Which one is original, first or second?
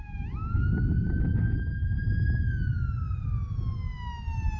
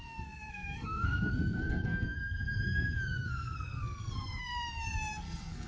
first